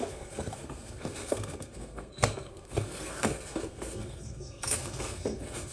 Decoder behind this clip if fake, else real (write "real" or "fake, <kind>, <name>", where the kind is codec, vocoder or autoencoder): fake, codec, SNAC